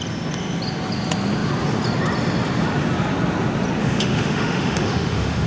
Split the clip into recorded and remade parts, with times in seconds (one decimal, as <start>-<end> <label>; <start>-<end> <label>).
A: 0.0-3.8 recorded; 3.8-5.5 remade